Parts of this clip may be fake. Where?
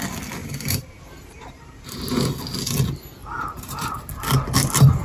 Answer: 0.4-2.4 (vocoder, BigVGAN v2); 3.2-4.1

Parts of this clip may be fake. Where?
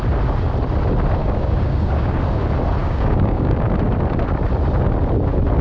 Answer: 1.2-2.2 (codec, DAC); 2.8-3.7